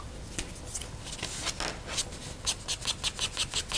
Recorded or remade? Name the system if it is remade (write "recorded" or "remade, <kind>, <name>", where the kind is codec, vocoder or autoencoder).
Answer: recorded